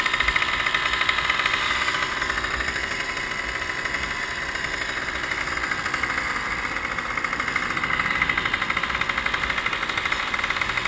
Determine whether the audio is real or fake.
real